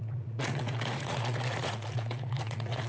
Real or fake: fake